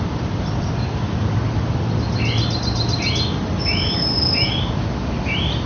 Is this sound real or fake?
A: fake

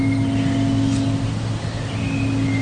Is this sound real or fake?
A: real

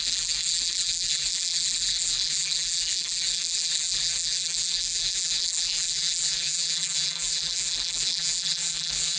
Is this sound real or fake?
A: fake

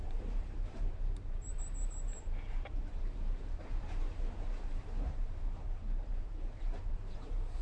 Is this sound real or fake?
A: fake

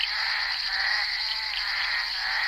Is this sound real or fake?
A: fake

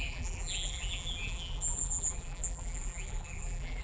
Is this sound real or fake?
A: fake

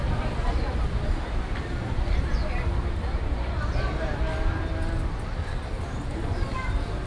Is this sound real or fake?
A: real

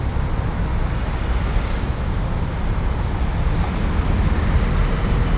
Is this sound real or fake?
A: real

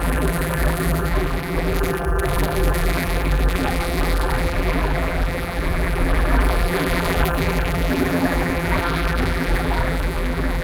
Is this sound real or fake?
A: fake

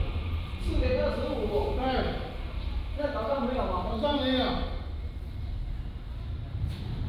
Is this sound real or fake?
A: fake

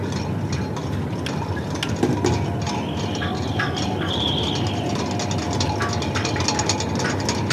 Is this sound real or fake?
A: real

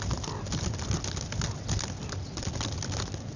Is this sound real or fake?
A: real